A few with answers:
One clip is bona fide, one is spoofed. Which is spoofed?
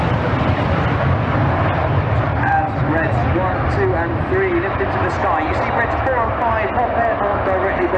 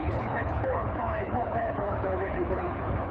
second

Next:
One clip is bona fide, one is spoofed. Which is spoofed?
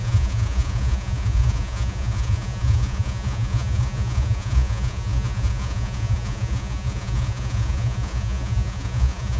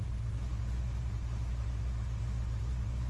first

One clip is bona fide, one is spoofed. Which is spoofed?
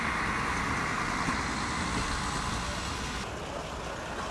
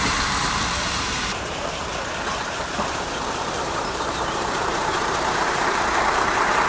second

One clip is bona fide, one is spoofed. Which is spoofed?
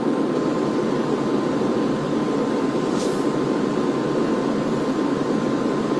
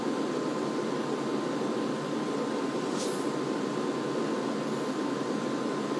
first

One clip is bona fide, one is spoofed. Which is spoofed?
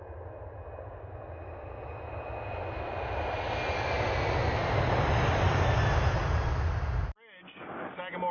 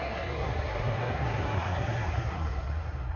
second